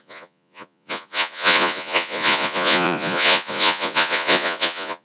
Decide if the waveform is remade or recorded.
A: remade